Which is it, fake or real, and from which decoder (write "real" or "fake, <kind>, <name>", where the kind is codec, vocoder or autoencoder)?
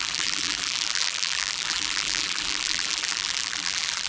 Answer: fake, vocoder, BigVGAN v2